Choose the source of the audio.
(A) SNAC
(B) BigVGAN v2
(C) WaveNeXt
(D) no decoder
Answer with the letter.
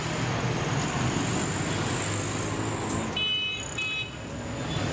D